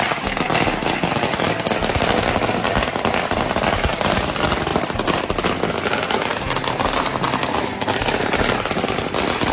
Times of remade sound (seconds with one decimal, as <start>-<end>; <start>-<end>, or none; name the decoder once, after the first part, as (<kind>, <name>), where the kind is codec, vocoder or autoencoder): none